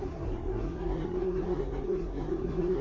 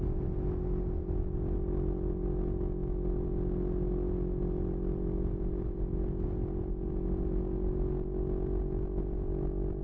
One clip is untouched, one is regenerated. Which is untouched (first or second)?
second